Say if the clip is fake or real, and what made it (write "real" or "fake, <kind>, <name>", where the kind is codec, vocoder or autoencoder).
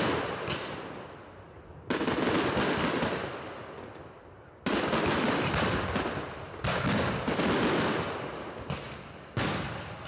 real